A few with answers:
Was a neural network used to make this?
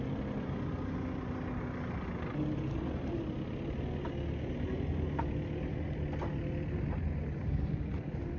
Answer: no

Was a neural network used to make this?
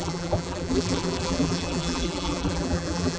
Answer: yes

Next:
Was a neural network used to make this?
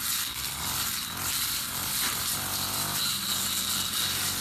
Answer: yes